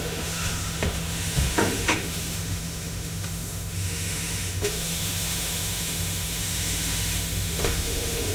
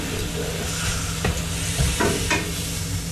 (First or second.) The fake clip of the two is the first